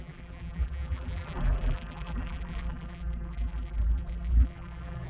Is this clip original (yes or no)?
no